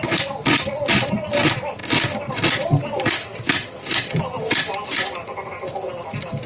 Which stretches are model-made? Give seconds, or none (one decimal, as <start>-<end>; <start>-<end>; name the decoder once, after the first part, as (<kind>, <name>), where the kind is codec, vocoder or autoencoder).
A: none